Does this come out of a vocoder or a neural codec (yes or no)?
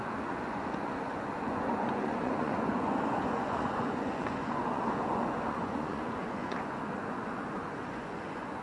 yes